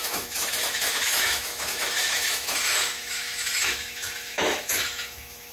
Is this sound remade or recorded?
remade